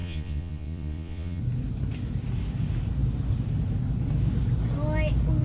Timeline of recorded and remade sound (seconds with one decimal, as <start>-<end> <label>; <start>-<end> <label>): 0.0-1.4 remade; 1.4-5.4 recorded